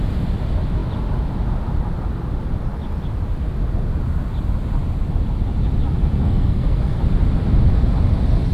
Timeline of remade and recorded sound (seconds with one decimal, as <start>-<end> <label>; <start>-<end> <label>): 0.0-6.2 recorded; 6.2-7.0 remade; 7.0-8.5 recorded